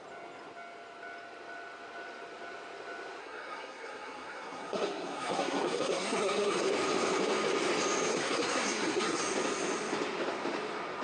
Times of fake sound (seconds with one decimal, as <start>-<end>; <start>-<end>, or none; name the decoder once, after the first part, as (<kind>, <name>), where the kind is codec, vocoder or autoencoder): 3.2-6.6 (codec, SNAC); 8.1-9.2